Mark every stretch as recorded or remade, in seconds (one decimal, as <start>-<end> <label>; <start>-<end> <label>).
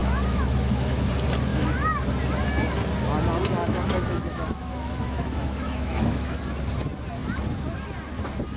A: 0.0-1.1 remade; 1.1-1.5 recorded; 1.5-2.1 remade; 2.1-3.6 recorded; 3.6-6.4 remade; 6.4-8.6 recorded